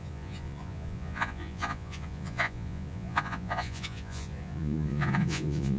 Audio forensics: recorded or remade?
remade